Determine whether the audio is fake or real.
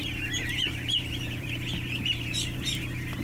fake